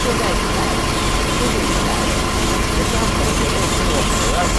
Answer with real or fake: real